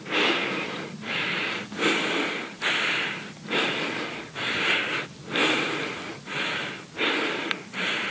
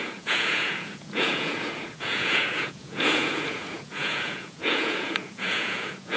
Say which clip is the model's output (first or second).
second